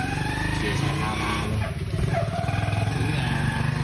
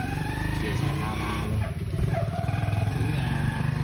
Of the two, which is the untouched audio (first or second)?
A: first